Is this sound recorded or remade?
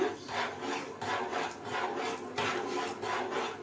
recorded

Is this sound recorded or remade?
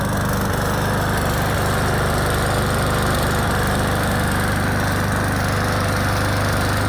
recorded